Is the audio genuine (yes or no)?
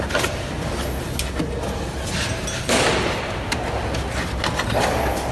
yes